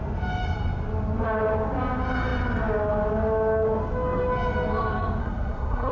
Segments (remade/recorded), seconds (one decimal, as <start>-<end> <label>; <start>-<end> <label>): 0.0-5.2 recorded; 5.2-5.9 remade